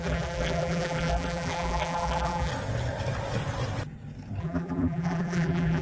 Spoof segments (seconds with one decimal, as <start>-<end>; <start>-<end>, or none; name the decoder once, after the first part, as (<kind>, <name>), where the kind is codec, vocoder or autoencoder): 0.0-2.5 (vocoder, BigVGAN v2); 4.4-5.8